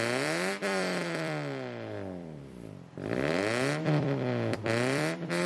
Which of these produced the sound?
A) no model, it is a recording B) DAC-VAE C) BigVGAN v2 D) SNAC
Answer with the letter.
C